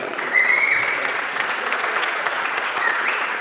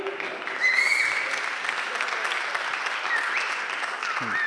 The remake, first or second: first